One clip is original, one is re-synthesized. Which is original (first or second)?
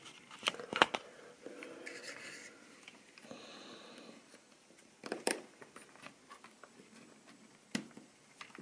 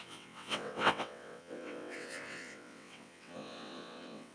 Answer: first